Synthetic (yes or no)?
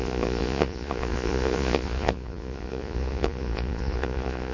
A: yes